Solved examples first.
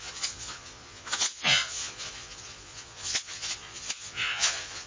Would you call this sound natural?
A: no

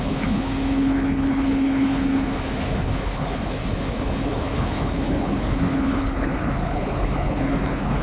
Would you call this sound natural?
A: no